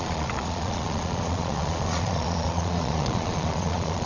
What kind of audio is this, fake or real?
fake